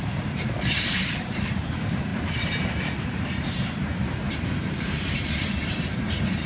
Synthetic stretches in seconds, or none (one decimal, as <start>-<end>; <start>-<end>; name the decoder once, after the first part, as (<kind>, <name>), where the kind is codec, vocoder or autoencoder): 0.0-6.5 (vocoder, BigVGAN v2)